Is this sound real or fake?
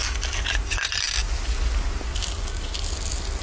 real